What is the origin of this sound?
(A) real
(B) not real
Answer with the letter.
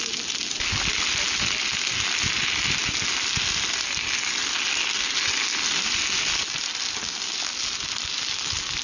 A